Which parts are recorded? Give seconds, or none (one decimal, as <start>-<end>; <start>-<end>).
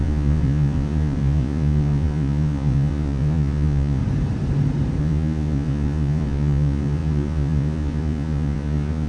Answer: 4.0-5.0